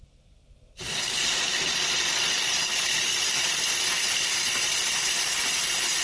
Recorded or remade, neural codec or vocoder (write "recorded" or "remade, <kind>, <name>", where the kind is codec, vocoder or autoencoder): recorded